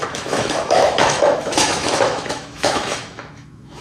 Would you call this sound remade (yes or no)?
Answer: yes